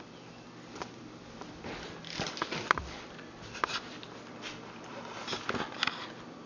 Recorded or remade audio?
recorded